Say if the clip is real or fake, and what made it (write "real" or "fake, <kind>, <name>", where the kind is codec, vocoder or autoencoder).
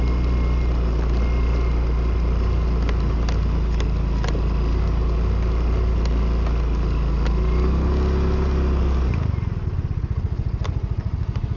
real